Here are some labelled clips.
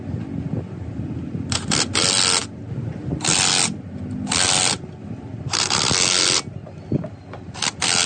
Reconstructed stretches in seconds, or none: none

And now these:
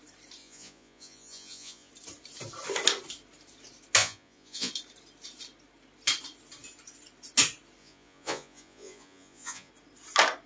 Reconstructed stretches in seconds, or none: 0.4-1.9 (vocoder, Vocos); 4.0-4.7; 7.8-9.7

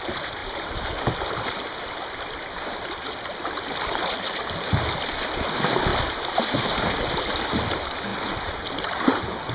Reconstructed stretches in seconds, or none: 0.0-5.9 (vocoder, BigVGAN v2); 7.1-8.1

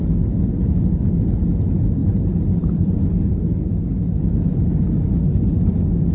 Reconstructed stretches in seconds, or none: none

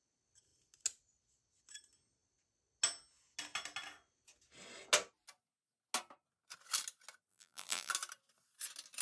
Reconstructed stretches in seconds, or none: 7.3-7.9 (vocoder, BigVGAN v2)